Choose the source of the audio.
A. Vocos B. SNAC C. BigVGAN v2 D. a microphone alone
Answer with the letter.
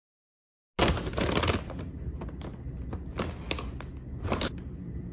D